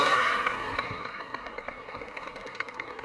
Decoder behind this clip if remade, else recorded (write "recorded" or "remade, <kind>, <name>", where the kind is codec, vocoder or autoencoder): remade, codec, SNAC